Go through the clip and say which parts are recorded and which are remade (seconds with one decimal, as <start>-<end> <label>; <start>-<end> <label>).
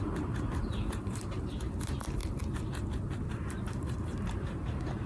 0.0-2.2 remade; 2.2-3.5 recorded; 3.5-5.1 remade